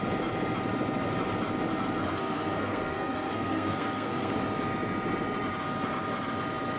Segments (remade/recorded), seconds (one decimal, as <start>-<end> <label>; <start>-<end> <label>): 0.0-2.0 recorded; 2.0-4.3 remade; 4.3-6.8 recorded